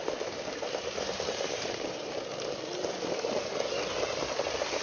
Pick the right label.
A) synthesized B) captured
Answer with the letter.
B